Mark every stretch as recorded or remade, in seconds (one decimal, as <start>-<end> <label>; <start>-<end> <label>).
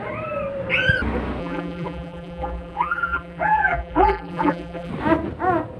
0.0-1.4 recorded; 1.4-4.9 remade; 4.9-5.8 recorded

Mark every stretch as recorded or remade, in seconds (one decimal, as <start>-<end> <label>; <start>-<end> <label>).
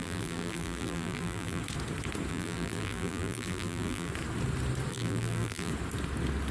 0.0-1.6 remade; 1.6-2.3 recorded; 2.3-4.1 remade; 4.1-4.9 recorded; 4.9-5.7 remade; 5.7-6.5 recorded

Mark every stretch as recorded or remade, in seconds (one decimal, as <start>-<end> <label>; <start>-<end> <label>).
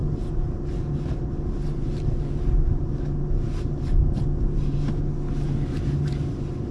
0.0-6.7 recorded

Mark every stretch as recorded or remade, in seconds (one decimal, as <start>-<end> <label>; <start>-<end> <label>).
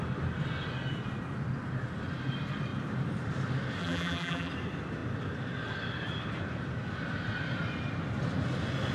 0.0-3.8 recorded; 3.8-4.5 remade; 4.5-8.9 recorded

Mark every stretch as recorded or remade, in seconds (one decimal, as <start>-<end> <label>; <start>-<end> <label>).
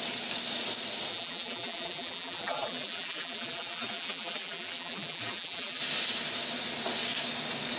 0.0-1.1 recorded; 1.1-5.8 remade; 5.8-7.8 recorded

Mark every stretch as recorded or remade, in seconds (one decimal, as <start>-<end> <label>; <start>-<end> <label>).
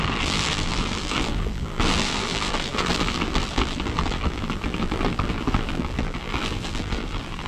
0.0-7.5 remade